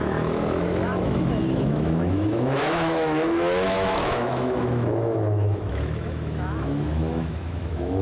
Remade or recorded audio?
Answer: remade